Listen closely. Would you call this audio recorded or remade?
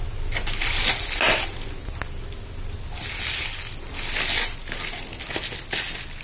recorded